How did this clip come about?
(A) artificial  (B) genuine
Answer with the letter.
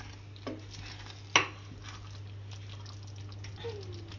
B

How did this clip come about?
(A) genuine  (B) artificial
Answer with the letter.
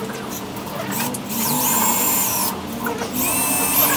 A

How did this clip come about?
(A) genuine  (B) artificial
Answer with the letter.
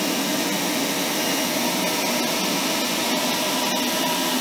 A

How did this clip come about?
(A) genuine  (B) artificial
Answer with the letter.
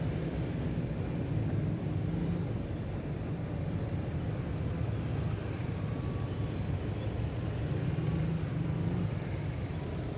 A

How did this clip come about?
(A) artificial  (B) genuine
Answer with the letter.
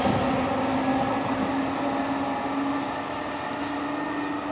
B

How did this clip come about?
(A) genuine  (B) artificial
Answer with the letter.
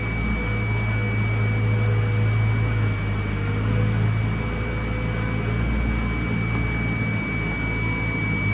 A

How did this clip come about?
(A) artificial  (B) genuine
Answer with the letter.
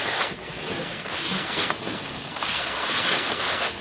A